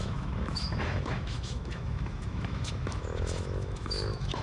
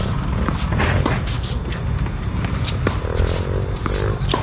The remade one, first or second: first